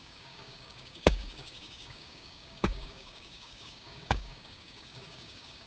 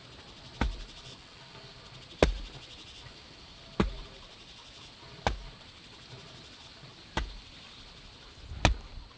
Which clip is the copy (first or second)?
first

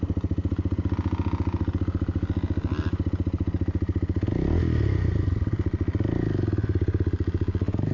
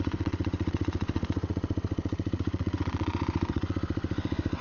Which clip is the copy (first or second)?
second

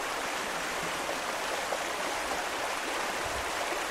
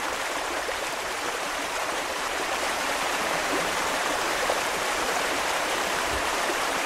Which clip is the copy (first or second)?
second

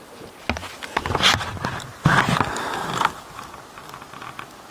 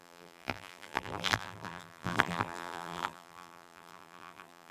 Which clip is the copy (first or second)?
second